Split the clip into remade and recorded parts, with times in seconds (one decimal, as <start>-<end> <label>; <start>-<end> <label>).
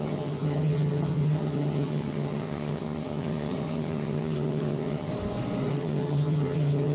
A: 0.0-5.1 remade; 5.1-5.7 recorded; 5.7-6.9 remade